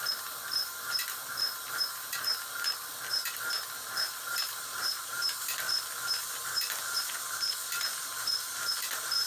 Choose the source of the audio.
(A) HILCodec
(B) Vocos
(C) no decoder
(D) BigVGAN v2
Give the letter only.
D